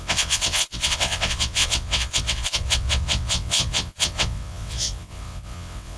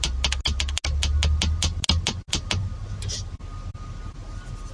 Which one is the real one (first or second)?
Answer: second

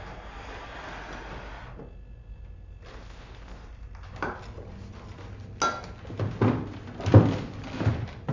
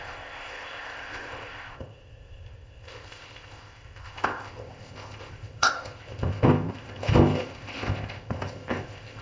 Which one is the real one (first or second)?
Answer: first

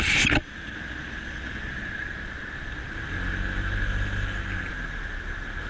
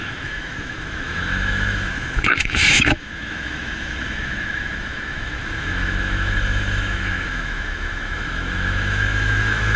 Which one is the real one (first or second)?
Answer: first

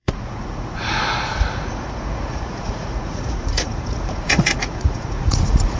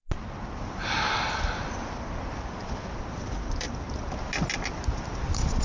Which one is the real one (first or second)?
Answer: second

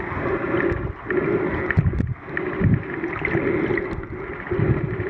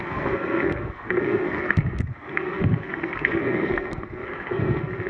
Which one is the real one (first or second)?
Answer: first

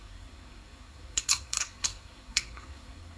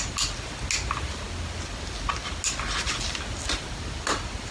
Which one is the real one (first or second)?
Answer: second